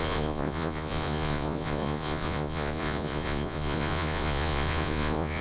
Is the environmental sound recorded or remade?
remade